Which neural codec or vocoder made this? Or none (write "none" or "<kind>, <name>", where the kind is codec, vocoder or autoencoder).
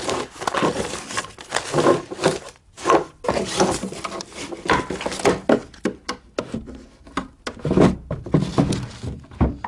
none